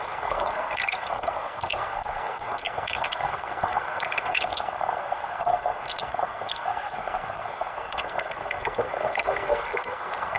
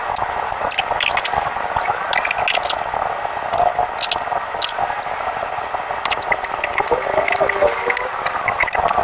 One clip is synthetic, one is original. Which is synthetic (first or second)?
first